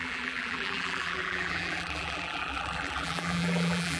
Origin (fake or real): fake